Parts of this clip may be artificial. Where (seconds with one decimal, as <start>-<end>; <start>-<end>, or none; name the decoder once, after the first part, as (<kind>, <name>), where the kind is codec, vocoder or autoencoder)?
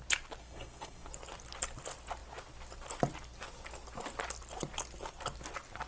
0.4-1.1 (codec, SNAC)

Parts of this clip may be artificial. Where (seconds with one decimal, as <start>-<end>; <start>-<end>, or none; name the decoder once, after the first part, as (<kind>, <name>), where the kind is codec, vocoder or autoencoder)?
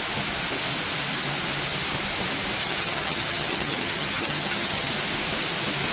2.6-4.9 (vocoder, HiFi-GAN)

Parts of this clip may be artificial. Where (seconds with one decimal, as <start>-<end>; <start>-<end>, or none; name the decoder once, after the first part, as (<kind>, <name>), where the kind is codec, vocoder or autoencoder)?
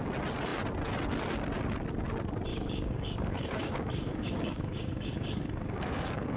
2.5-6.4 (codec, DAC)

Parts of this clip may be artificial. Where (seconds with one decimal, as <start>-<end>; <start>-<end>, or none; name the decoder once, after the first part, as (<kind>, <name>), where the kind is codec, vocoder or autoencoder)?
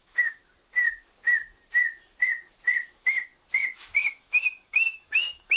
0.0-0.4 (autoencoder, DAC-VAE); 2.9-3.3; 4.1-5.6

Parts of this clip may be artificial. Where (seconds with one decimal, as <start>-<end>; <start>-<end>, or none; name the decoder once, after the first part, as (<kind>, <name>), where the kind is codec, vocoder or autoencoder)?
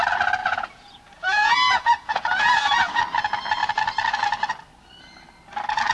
0.4-3.0 (vocoder, Vocos)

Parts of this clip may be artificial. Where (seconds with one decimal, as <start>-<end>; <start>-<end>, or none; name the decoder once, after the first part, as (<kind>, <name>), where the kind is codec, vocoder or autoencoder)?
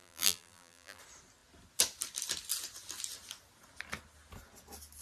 0.0-1.0 (vocoder, BigVGAN v2)